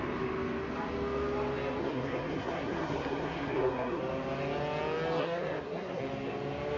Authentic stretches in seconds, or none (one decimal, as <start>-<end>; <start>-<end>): 0.0-1.8; 4.0-5.2; 6.0-6.8